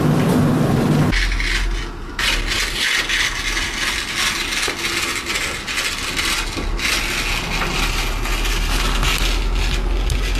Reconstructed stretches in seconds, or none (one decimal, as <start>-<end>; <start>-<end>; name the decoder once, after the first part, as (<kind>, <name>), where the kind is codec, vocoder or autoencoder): none